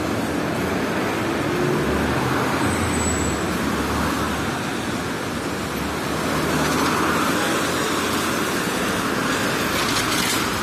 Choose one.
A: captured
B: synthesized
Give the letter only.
A